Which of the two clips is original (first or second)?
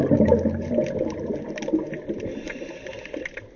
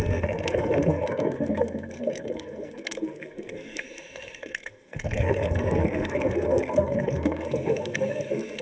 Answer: first